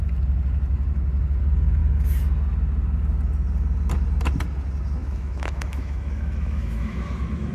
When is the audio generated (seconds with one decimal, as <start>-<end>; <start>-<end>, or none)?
5.0-7.5

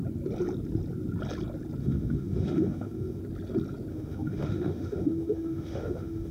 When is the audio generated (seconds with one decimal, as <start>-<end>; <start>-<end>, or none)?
1.8-3.2; 3.9-6.3